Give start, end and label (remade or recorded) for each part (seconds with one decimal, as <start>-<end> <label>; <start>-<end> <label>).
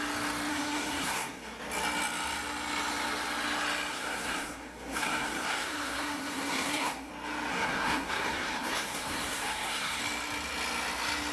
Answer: 0.0-0.5 recorded; 0.5-1.6 remade; 1.6-3.9 recorded; 3.9-7.1 remade; 7.1-7.5 recorded; 7.5-10.0 remade; 10.0-11.3 recorded